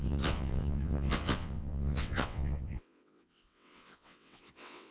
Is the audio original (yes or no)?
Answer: no